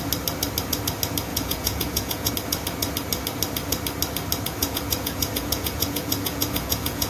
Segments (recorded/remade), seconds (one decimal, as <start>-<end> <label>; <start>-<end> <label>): 0.0-1.3 recorded; 1.3-2.3 remade; 2.3-4.6 recorded; 4.6-7.1 remade